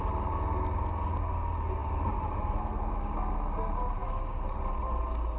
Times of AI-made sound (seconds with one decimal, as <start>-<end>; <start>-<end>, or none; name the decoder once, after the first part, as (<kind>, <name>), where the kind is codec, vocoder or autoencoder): 1.8-2.6 (vocoder, BigVGAN v2)